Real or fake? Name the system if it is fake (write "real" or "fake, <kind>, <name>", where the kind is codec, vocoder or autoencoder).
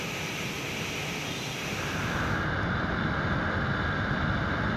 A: real